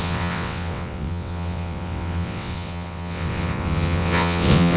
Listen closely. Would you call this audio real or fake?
fake